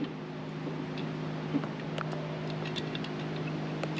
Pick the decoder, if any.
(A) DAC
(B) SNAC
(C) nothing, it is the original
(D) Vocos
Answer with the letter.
C